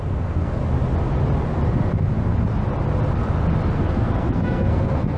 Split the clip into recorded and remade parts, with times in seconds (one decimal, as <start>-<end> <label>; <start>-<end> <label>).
0.0-0.6 remade; 0.6-3.7 recorded; 3.7-5.2 remade